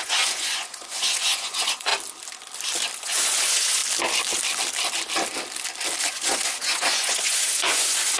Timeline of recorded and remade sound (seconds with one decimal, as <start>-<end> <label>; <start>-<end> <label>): 0.0-1.9 remade; 1.9-3.0 recorded; 3.0-3.8 remade; 3.8-6.0 recorded; 6.0-8.2 remade